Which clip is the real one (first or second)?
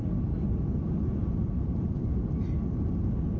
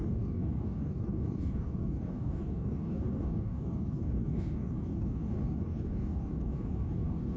first